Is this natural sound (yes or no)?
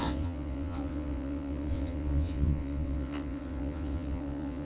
no